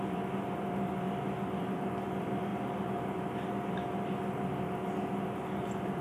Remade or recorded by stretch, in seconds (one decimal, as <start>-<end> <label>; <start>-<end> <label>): 0.0-6.0 recorded

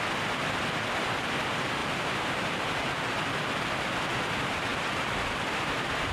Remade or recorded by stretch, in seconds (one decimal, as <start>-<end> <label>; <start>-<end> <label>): 0.0-1.8 recorded; 1.8-2.9 remade; 2.9-6.1 recorded